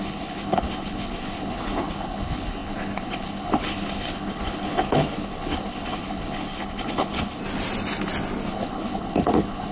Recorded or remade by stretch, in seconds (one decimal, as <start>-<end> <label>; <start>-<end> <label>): 0.0-7.4 remade; 7.4-8.5 recorded; 8.5-9.7 remade